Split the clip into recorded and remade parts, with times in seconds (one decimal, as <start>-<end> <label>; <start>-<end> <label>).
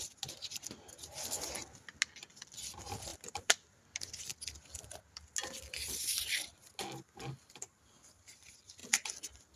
0.0-3.1 recorded; 3.1-3.8 remade; 3.8-9.6 recorded